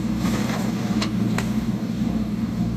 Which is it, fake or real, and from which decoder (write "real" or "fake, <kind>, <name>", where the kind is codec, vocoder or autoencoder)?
fake, codec, DAC